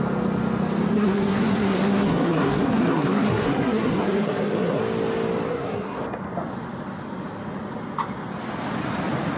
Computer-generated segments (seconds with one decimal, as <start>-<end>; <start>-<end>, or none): 0.9-4.8; 5.5-6.0